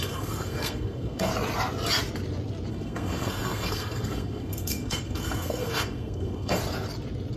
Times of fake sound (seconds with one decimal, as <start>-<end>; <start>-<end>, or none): 0.0-1.3; 2.7-6.6